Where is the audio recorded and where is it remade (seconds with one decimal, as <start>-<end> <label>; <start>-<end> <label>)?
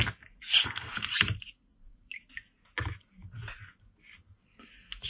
0.0-0.6 recorded; 0.6-1.1 remade; 1.1-5.1 recorded